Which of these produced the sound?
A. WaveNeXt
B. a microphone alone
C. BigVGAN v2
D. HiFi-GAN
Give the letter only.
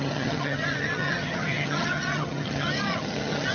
D